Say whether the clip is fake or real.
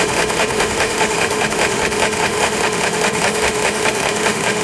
fake